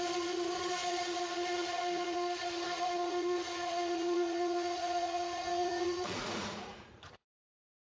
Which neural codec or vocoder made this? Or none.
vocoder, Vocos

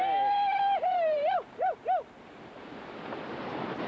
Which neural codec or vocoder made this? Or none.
vocoder, BigVGAN v2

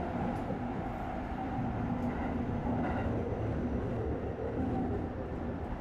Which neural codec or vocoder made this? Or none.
none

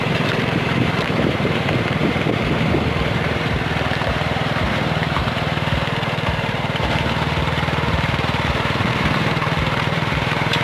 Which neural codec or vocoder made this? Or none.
vocoder, BigVGAN v2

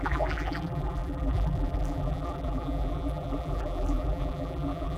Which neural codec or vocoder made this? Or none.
vocoder, BigVGAN v2